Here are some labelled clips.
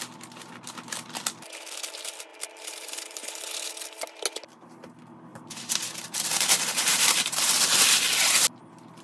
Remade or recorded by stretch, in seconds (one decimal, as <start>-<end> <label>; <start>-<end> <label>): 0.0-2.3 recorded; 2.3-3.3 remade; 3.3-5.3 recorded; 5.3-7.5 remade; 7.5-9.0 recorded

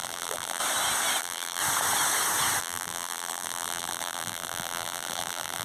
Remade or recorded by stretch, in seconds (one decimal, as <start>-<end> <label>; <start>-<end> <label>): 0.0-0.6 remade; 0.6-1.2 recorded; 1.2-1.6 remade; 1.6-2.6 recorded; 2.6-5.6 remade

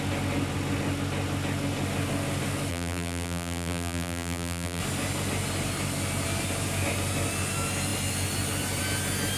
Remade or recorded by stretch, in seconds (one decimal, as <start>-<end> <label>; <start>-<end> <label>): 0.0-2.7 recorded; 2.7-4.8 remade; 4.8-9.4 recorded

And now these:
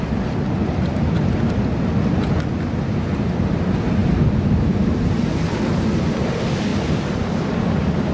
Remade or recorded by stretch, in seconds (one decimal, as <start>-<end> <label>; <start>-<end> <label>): 0.0-0.6 recorded; 0.6-1.9 remade; 1.9-6.7 recorded; 6.7-8.1 remade